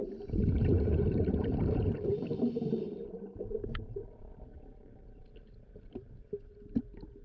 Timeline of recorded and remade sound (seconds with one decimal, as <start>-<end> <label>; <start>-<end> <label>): 0.0-4.3 remade; 4.3-7.2 recorded